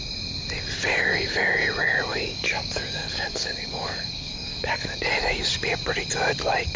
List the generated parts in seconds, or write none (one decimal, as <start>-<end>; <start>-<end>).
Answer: 2.1-5.3